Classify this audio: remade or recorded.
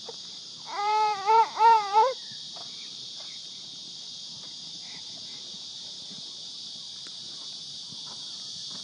remade